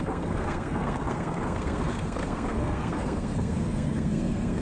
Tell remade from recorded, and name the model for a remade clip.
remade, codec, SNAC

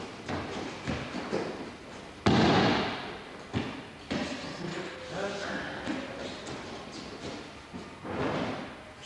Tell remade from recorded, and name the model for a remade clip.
recorded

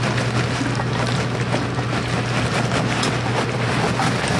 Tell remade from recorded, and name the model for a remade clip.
recorded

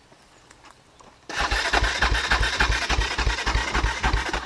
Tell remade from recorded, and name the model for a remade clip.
recorded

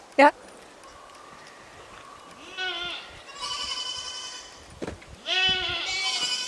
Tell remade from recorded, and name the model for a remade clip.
recorded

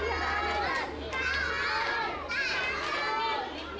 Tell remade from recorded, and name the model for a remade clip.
recorded